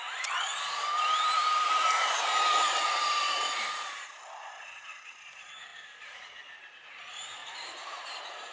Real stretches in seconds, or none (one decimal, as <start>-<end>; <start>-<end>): 0.0-0.5; 4.5-5.7; 6.3-7.4

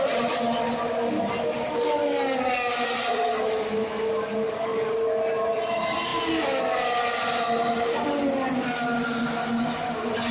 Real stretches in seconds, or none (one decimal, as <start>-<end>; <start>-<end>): 0.0-2.0; 2.7-4.3; 4.9-10.3

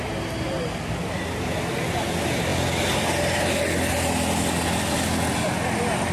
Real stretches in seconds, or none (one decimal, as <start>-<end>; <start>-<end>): 0.0-6.1

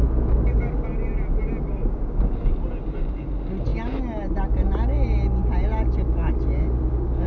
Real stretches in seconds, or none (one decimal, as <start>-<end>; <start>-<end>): 0.0-7.3

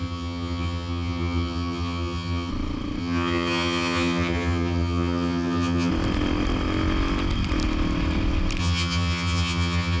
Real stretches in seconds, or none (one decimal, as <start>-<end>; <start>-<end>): 2.5-3.0; 5.9-8.6